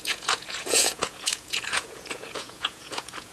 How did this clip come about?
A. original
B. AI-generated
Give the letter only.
B